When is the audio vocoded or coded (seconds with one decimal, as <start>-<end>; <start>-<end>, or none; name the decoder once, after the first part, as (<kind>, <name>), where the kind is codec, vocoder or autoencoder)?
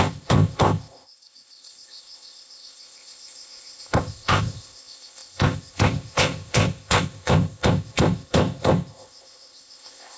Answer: 0.0-10.2 (codec, ZipCodec)